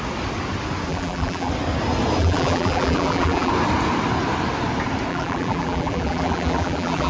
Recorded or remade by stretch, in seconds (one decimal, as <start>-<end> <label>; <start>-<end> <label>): 0.0-0.9 recorded; 0.9-1.5 remade; 1.5-2.2 recorded; 2.2-3.5 remade; 3.5-5.1 recorded; 5.1-7.1 remade